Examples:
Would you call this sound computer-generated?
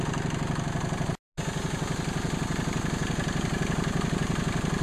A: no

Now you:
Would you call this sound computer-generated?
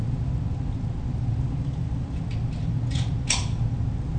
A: no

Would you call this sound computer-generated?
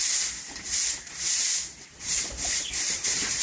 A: yes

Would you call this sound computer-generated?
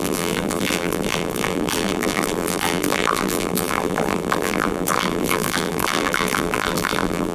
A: yes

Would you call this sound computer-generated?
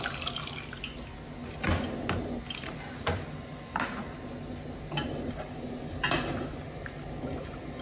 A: no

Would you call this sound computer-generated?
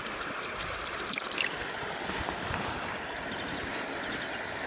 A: no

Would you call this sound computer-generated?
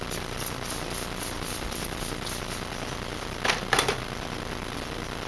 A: no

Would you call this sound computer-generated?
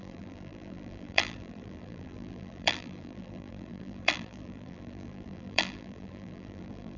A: yes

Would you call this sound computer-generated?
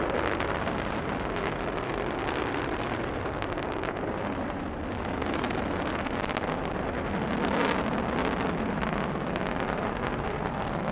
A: no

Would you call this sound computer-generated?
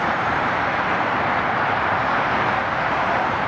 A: yes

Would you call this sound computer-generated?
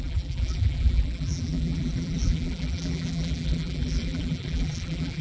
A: yes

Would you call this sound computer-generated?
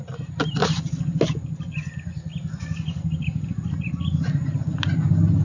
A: no